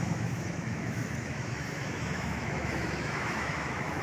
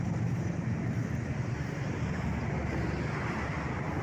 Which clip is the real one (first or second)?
second